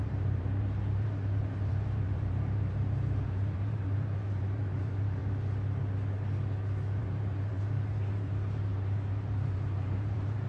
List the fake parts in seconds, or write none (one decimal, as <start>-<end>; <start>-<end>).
0.0-5.2; 7.0-10.5